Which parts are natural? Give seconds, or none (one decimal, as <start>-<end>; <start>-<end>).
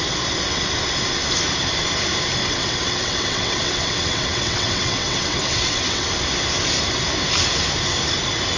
0.0-2.4; 6.1-8.6